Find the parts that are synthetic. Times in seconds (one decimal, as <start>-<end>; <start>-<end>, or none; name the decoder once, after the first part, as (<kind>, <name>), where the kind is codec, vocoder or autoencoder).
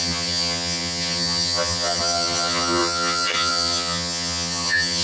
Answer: 0.0-5.0 (vocoder, HiFi-GAN)